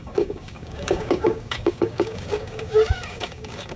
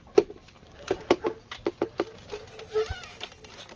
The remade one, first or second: first